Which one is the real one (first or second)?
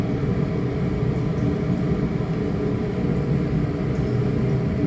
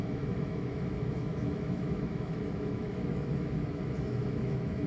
first